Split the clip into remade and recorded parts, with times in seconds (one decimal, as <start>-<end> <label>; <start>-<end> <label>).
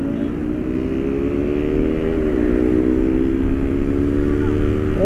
0.0-5.0 recorded